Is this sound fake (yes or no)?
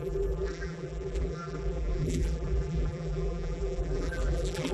yes